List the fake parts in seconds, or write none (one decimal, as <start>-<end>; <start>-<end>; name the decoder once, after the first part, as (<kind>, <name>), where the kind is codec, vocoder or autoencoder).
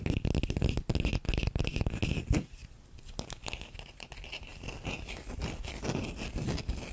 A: none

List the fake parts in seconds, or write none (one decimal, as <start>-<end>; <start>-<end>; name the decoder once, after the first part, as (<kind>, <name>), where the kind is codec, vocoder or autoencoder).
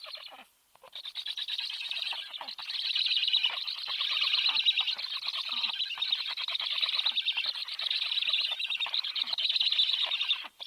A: none